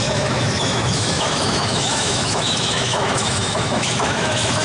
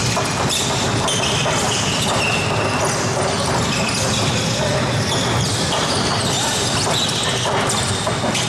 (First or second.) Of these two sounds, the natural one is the second